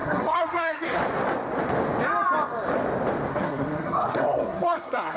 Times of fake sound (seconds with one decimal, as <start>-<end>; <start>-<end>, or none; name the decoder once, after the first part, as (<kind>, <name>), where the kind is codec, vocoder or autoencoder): 0.0-1.0 (codec, SNAC); 3.3-5.2